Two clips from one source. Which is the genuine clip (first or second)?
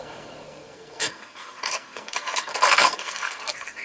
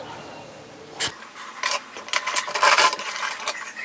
second